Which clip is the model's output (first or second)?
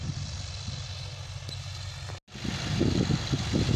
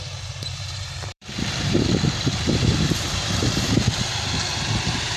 second